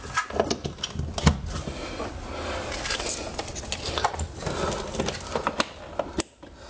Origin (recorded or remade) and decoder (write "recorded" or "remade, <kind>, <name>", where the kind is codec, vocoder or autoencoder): recorded